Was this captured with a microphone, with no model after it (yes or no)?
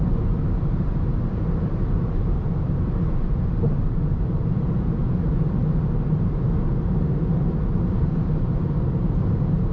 no